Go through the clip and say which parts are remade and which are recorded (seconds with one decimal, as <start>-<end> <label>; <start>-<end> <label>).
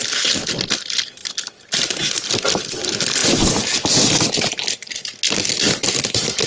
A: 0.0-6.5 recorded